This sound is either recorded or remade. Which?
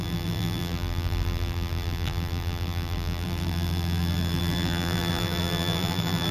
remade